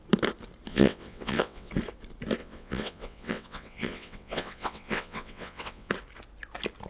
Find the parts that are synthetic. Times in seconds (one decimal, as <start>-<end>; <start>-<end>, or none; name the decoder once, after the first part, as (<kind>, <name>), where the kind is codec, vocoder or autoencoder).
0.7-1.7 (vocoder, WaveNeXt); 2.4-5.9